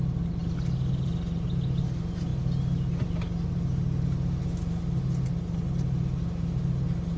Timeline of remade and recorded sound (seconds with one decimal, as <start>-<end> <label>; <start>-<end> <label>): 0.0-7.2 recorded